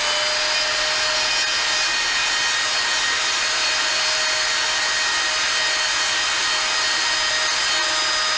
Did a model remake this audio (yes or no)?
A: no